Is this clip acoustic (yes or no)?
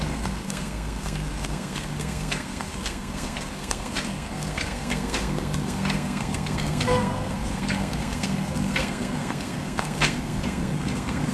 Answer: no